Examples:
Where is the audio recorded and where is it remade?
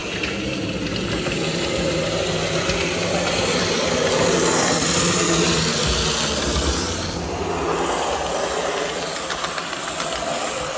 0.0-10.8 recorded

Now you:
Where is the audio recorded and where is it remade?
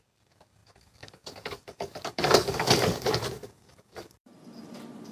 0.0-4.3 remade; 4.3-5.1 recorded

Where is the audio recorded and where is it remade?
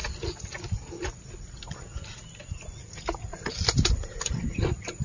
0.0-2.8 recorded; 2.8-3.5 remade; 3.5-5.0 recorded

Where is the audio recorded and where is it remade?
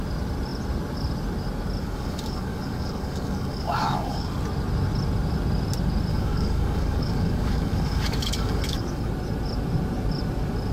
0.0-1.8 recorded; 1.8-4.4 remade; 4.4-6.1 recorded; 6.1-9.1 remade; 9.1-10.7 recorded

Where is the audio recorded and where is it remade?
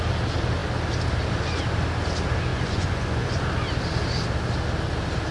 0.0-2.5 recorded; 2.5-3.4 remade; 3.4-5.3 recorded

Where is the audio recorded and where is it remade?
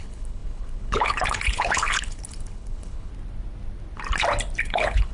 0.0-3.1 remade; 3.1-4.6 recorded; 4.6-5.1 remade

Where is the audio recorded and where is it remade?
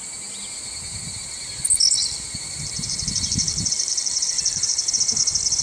0.0-2.0 recorded; 2.0-4.9 remade; 4.9-5.6 recorded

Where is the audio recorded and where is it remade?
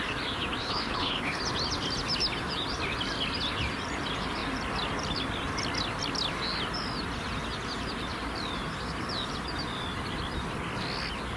0.0-0.6 recorded; 0.6-1.4 remade; 1.4-11.4 recorded